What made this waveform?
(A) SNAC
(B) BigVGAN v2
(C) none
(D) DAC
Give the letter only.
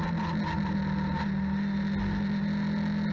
C